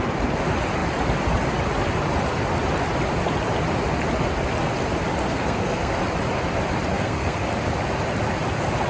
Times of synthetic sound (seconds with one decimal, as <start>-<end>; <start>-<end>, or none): 5.2-6.0; 6.9-7.5